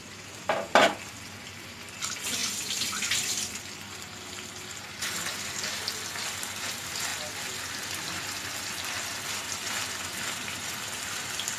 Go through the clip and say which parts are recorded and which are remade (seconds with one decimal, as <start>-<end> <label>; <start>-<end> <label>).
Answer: 0.0-11.6 recorded